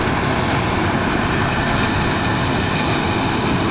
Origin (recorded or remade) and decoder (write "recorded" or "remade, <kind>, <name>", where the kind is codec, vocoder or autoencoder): recorded